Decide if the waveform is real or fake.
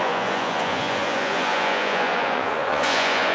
fake